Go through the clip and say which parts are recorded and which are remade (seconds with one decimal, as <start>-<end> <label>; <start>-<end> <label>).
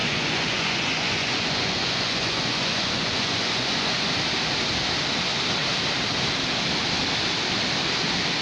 0.0-4.1 remade; 4.1-8.4 recorded